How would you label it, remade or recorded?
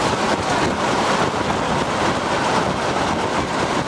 recorded